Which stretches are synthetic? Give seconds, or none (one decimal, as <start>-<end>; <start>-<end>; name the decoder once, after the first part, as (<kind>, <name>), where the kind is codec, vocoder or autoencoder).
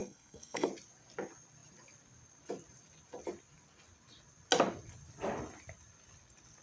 0.0-0.7 (codec, SNAC)